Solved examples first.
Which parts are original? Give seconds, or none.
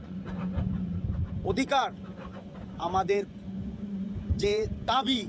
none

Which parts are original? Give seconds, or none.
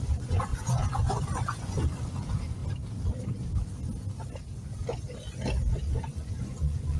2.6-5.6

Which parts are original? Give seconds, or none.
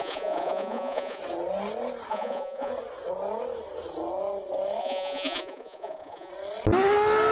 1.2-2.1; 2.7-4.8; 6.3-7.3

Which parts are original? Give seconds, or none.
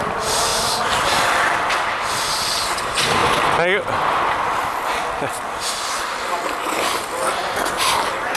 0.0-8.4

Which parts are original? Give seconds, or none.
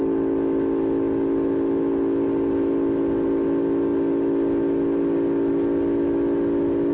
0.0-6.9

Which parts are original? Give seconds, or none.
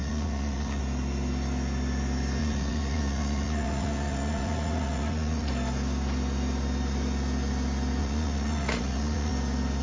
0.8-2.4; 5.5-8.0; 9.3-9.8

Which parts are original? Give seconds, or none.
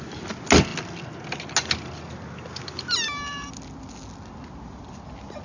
0.0-5.4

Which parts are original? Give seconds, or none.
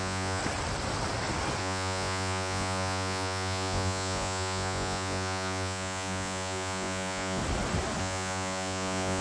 0.4-1.6; 7.4-8.0